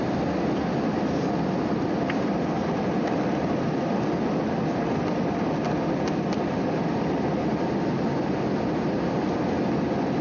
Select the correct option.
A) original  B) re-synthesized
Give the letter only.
A